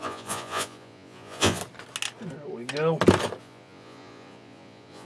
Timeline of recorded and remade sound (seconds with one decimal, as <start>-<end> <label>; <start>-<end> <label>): 0.0-1.6 remade; 1.6-3.4 recorded; 3.4-5.0 remade